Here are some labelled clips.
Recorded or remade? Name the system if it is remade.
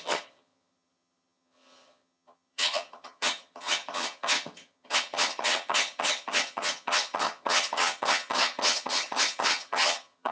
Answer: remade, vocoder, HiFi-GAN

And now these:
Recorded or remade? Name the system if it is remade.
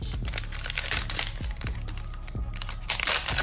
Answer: recorded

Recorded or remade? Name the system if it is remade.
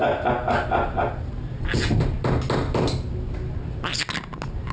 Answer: recorded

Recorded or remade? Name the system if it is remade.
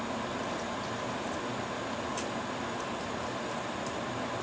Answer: recorded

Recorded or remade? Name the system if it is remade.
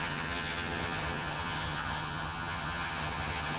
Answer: remade, vocoder, HiFi-GAN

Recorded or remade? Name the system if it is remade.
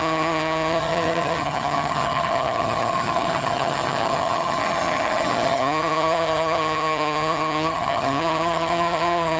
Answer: remade, vocoder, HiFi-GAN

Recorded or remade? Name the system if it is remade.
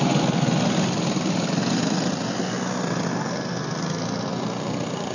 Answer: recorded